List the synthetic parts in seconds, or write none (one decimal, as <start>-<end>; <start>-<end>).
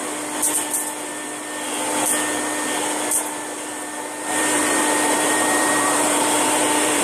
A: 4.2-7.0